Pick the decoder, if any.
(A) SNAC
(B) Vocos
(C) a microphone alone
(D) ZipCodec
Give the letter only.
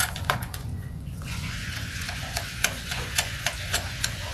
B